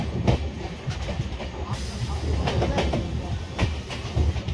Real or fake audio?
real